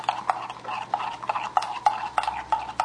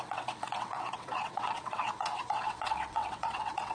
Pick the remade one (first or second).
second